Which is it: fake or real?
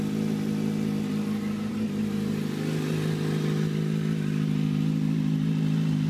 real